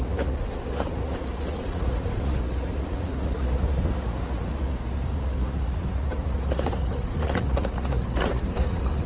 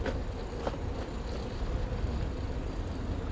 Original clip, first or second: second